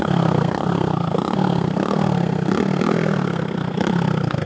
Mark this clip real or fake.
fake